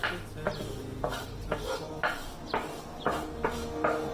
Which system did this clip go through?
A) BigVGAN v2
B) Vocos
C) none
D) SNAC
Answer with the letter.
C